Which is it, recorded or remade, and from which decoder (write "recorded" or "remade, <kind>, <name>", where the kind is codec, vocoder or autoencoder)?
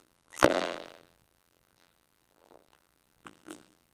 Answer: remade, vocoder, BigVGAN v2